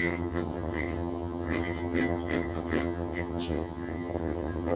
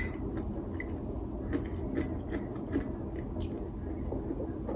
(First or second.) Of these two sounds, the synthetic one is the first